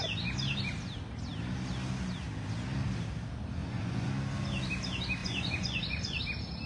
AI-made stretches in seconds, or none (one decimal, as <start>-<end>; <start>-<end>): 3.6-4.1; 5.2-6.2